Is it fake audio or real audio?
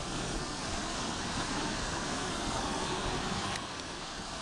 fake